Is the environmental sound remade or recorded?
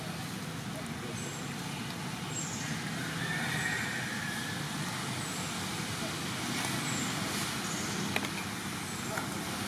recorded